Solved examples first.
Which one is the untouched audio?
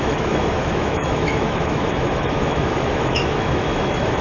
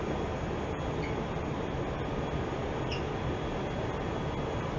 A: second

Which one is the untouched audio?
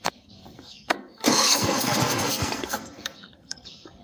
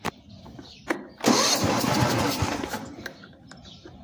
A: second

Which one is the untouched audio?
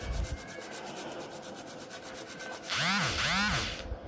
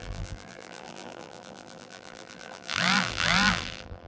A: first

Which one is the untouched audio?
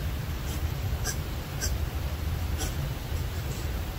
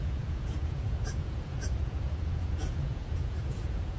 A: first